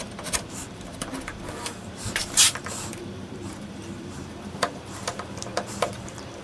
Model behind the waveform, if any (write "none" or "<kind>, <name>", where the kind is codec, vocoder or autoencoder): vocoder, BigVGAN v2